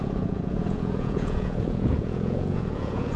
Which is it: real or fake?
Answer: fake